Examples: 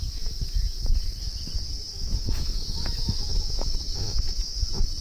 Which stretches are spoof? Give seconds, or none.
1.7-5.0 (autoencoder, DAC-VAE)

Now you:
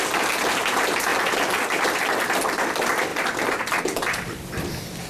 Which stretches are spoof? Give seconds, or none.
0.0-5.1 (vocoder, BigVGAN v2)

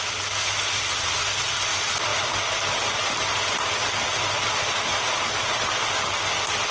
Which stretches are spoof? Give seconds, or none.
none

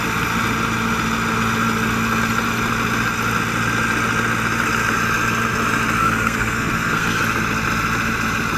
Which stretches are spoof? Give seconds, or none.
6.0-7.2 (codec, SNAC)

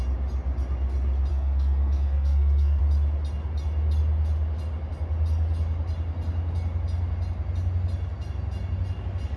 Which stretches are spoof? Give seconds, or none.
1.3-2.8 (codec, SNAC)

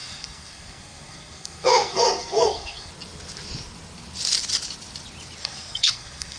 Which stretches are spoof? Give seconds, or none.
0.0-2.9 (codec, SNAC); 5.4-6.4

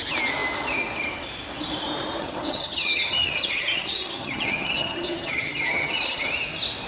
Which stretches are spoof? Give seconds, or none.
2.2-6.3 (vocoder, HiFi-GAN)